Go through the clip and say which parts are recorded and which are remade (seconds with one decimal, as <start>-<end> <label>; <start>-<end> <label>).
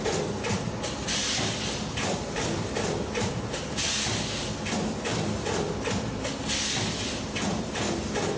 0.0-8.4 recorded